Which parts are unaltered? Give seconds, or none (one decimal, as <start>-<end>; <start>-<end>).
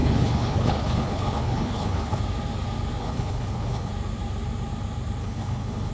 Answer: 2.2-3.0; 3.9-5.2